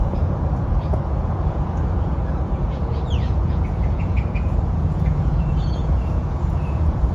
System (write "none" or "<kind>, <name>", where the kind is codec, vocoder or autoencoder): vocoder, Vocos